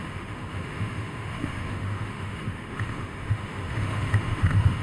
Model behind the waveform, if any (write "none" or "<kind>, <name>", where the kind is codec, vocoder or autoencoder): autoencoder, DAC-VAE